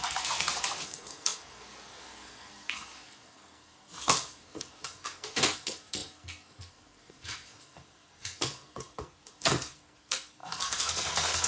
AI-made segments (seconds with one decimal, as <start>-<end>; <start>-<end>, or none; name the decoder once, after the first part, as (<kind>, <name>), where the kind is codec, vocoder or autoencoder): 0.0-11.5 (codec, SNAC)